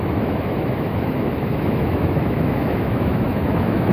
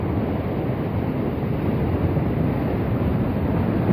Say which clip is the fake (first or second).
first